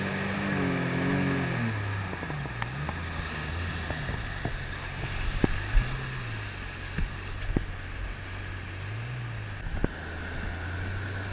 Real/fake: real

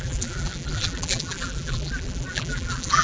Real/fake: fake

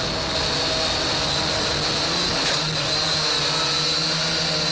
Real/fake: real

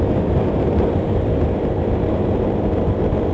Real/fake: real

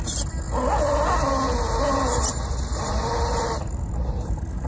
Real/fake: real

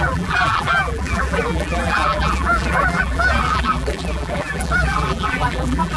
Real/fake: fake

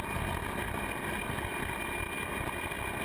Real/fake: real